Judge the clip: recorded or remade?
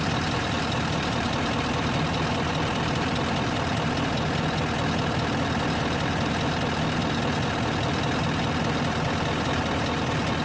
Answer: recorded